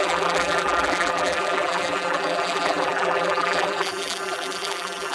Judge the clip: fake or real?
fake